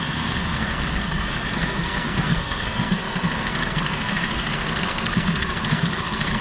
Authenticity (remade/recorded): remade